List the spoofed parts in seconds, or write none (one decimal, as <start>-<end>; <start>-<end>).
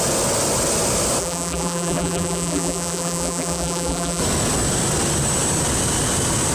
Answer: 1.2-4.2